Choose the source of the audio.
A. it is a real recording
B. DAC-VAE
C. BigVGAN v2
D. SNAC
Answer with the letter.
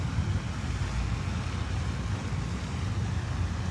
A